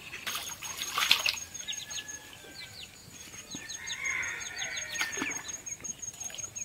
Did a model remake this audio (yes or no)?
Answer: no